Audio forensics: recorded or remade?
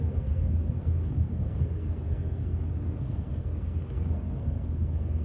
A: remade